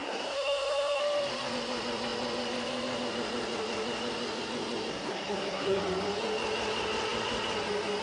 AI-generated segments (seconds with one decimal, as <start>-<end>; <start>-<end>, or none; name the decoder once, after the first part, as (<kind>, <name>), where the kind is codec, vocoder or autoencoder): 0.0-1.0 (codec, SNAC); 4.9-5.8